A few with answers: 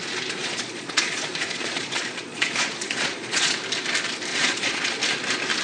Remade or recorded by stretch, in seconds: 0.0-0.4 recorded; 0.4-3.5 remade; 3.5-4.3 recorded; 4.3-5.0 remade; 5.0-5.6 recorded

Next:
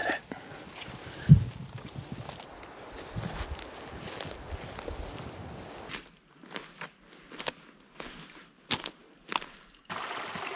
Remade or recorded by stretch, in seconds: 0.0-10.6 recorded

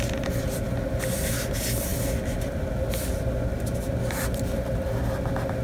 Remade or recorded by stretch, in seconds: 0.0-5.6 recorded

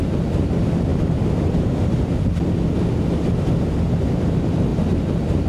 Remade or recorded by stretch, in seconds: 0.0-5.5 recorded

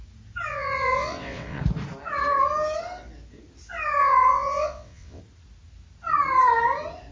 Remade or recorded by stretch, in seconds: 0.0-0.5 recorded; 0.5-1.6 remade; 1.6-4.0 recorded; 4.0-5.2 remade; 5.2-7.1 recorded

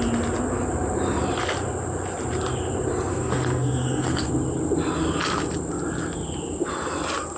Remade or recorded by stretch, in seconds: 0.0-3.1 recorded; 3.1-4.3 remade; 4.3-7.4 recorded